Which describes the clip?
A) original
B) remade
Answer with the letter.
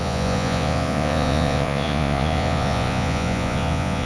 B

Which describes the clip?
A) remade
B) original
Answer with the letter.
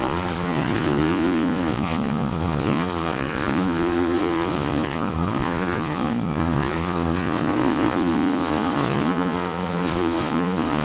A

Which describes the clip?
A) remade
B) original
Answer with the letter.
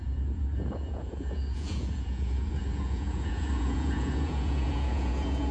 A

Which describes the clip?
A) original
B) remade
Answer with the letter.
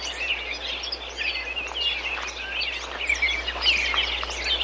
A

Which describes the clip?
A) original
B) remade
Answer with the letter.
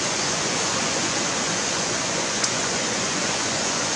B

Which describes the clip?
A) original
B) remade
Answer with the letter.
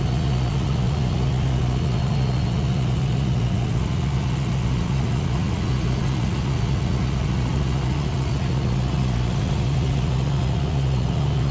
B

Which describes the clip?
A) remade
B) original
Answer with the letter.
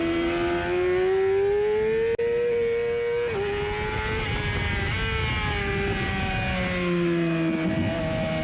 B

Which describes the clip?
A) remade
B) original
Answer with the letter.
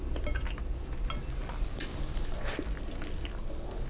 B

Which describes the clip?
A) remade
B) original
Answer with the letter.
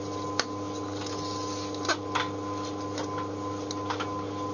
B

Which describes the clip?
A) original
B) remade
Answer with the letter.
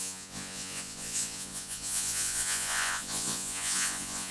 B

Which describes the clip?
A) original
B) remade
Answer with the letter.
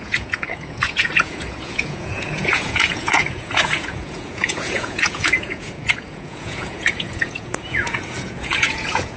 B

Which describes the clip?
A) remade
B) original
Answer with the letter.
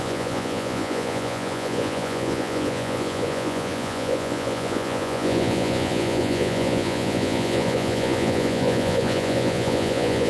A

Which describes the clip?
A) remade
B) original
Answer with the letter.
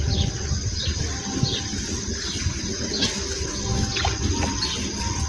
B